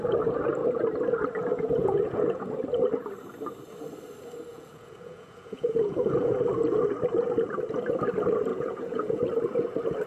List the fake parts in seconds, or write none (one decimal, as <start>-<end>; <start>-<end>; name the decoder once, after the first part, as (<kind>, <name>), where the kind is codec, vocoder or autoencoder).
1.5-2.6 (vocoder, Vocos); 4.5-6.4; 8.5-9.2